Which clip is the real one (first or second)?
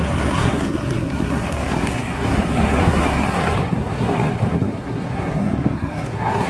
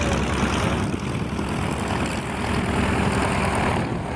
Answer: second